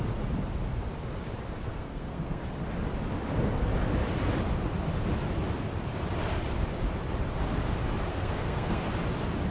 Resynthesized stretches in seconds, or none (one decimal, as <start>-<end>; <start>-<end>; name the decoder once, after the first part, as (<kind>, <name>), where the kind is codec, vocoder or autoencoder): 1.7-2.4 (codec, SNAC); 8.1-8.8